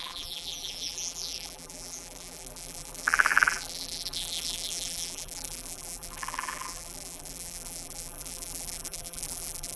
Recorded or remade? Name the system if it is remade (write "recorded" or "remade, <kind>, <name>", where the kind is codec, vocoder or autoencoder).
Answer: remade, vocoder, BigVGAN v2